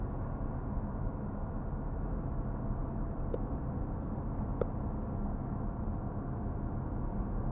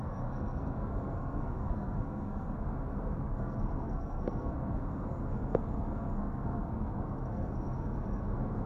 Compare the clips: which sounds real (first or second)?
first